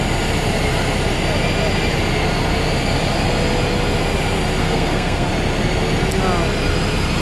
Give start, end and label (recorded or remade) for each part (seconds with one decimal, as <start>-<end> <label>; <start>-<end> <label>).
0.0-4.6 recorded; 4.6-5.3 remade; 5.3-7.2 recorded